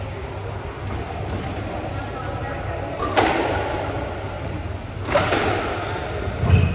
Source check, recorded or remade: recorded